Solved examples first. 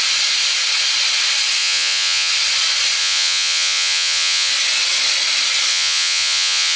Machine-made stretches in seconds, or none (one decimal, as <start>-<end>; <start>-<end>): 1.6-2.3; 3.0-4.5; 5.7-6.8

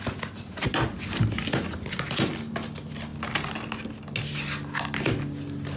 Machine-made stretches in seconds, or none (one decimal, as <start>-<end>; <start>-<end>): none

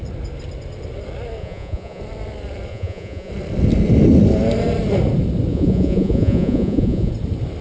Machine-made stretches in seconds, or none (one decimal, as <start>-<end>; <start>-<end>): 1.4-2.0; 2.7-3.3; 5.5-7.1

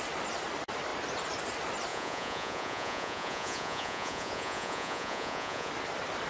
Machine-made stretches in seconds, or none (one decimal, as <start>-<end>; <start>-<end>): 1.9-5.7